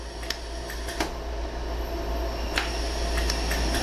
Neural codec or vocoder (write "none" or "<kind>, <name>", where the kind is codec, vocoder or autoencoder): none